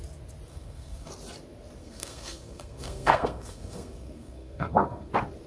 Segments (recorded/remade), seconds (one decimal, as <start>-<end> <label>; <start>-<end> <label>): 0.0-0.5 recorded; 0.5-1.1 remade; 1.1-1.8 recorded; 1.8-5.1 remade; 5.1-5.5 recorded